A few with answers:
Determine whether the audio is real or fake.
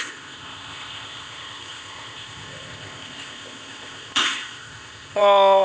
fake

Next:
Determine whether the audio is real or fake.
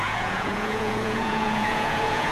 fake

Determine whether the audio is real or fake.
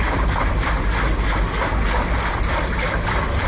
real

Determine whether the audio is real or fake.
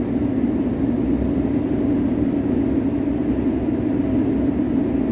real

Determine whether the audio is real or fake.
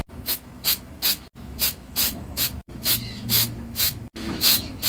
fake